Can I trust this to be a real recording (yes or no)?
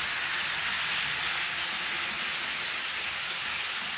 yes